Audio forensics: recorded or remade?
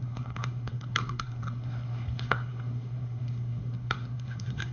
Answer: remade